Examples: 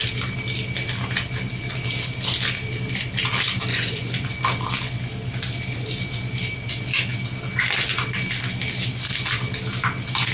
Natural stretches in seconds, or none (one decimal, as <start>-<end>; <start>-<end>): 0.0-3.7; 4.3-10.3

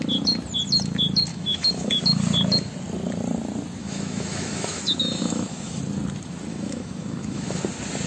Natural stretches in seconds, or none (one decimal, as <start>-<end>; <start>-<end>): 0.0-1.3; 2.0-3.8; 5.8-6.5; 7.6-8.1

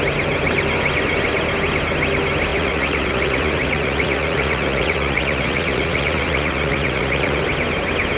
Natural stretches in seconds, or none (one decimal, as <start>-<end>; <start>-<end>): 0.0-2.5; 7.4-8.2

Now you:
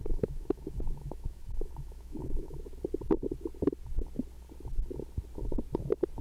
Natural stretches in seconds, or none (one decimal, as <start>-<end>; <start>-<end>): 2.6-6.2

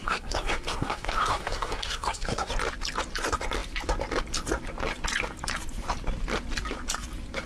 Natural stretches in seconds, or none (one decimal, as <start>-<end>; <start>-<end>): 2.5-7.5

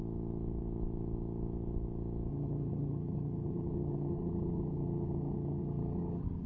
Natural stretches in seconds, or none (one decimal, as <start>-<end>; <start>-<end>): 0.0-2.3

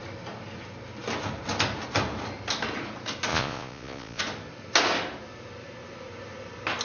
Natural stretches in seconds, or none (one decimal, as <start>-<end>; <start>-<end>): 0.0-3.3; 4.2-6.8